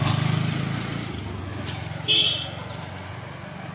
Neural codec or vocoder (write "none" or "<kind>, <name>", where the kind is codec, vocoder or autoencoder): none